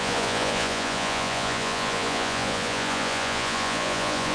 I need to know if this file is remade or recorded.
remade